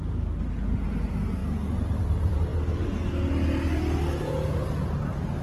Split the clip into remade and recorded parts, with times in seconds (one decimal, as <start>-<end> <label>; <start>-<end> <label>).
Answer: 0.0-5.4 recorded